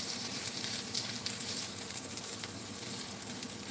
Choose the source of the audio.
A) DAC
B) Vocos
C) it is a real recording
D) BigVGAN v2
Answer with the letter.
D